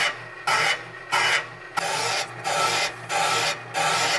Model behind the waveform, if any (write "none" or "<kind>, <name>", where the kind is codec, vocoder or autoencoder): none